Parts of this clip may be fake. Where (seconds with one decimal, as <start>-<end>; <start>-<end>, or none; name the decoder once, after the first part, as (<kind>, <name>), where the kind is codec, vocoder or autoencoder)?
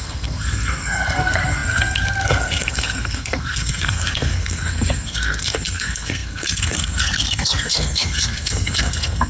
0.0-9.3 (codec, SNAC)